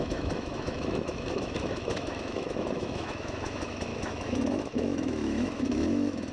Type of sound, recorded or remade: remade